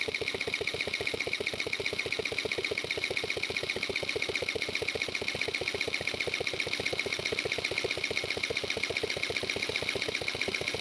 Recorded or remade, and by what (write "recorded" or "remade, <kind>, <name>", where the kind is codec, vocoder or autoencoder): recorded